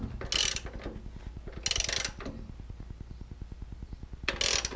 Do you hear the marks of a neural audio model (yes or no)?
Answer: no